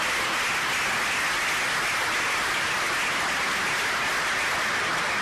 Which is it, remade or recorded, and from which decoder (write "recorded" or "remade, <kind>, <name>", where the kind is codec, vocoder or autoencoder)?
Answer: recorded